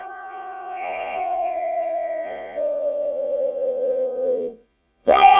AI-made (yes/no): yes